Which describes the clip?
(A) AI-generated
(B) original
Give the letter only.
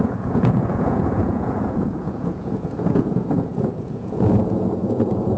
A